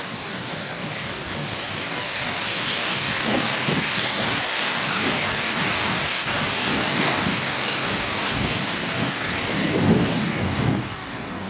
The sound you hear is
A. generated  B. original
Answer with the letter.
A